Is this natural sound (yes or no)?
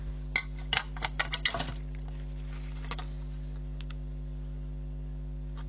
yes